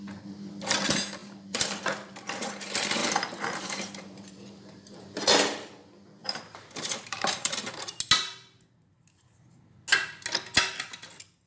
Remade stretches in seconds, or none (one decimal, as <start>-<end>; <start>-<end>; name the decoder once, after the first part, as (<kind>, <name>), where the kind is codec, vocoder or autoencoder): 1.2-2.5 (vocoder, BigVGAN v2); 3.0-5.2; 6.2-8.0